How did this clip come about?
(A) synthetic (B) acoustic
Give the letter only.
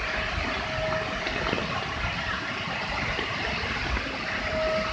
B